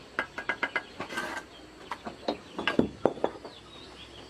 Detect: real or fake real